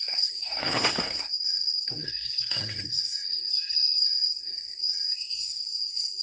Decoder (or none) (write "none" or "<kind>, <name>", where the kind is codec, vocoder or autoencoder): codec, SNAC